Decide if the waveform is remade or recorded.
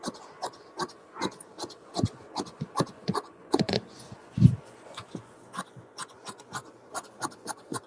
remade